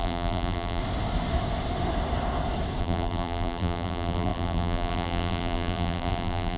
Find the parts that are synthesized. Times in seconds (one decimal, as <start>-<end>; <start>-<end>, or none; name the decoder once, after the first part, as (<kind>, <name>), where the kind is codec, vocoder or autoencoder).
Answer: 0.0-0.8 (vocoder, BigVGAN v2); 2.8-6.6

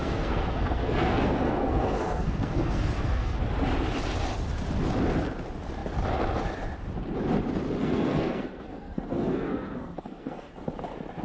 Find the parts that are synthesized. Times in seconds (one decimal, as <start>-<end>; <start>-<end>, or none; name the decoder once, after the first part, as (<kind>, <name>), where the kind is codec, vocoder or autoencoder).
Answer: 0.0-3.4 (codec, SNAC); 7.8-10.5

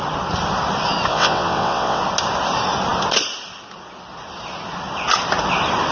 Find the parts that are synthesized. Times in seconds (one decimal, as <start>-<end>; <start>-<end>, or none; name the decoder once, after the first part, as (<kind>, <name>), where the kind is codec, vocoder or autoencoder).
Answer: 1.1-2.0 (vocoder, WaveNeXt)

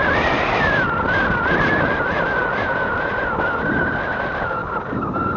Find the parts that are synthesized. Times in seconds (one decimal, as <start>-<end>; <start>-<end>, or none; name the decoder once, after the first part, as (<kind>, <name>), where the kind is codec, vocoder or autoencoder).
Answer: none

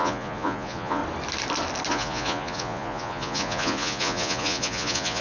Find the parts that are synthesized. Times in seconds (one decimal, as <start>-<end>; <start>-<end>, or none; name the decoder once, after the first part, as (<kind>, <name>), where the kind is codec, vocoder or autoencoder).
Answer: 0.0-1.0 (vocoder, Vocos); 1.9-5.2